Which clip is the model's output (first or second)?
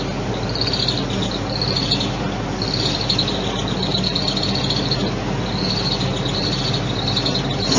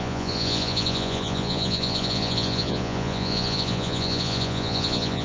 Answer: second